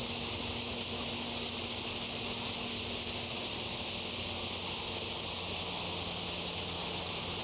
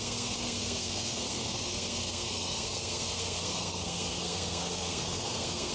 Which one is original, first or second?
first